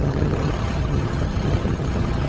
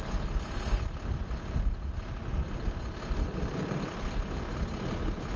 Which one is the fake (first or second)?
first